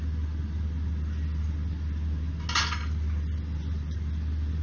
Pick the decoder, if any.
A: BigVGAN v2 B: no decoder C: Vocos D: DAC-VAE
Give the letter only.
B